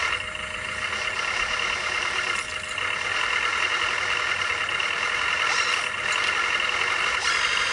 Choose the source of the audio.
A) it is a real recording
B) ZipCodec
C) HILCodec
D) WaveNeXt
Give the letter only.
A